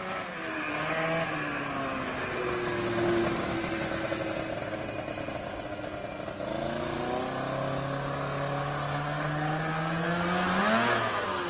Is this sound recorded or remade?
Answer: recorded